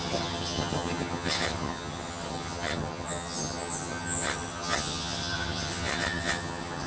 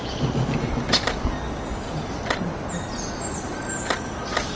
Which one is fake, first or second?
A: first